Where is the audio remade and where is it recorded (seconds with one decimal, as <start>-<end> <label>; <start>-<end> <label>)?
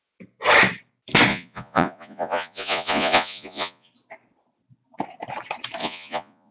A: 0.0-1.3 recorded; 1.3-3.9 remade; 3.9-5.8 recorded; 5.8-6.5 remade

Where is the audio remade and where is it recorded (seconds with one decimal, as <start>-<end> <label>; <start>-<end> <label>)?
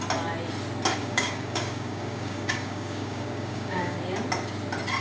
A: 0.0-1.0 recorded; 1.0-4.0 remade; 4.0-5.0 recorded